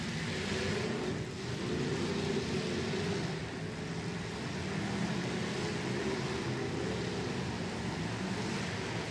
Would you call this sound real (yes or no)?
yes